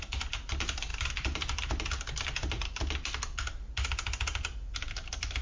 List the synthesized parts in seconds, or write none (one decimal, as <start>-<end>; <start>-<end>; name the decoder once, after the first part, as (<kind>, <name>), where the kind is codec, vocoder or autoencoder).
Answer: none